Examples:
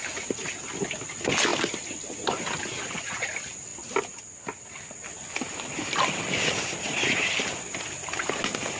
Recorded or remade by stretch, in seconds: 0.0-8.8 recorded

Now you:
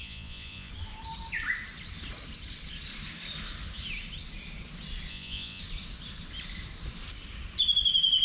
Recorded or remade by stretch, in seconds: 0.0-0.7 remade; 0.7-5.1 recorded; 5.1-5.6 remade; 5.6-8.2 recorded

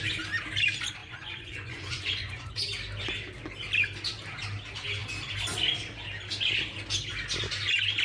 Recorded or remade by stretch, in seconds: 0.0-1.0 recorded; 1.0-2.5 remade; 2.5-8.0 recorded